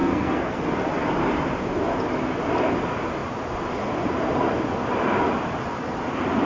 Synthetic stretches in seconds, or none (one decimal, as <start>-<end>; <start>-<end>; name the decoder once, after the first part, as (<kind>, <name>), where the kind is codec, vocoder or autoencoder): 0.0-0.6 (codec, SNAC)